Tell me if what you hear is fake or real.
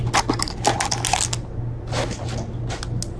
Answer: real